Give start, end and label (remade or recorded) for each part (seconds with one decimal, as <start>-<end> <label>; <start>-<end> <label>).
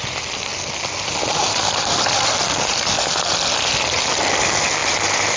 0.0-5.4 recorded